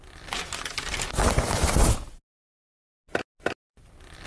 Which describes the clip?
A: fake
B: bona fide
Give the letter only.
B